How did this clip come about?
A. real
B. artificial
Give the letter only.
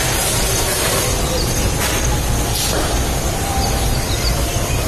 B